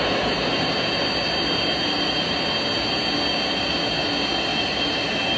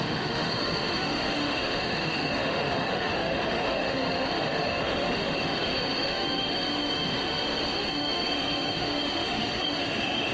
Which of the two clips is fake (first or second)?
second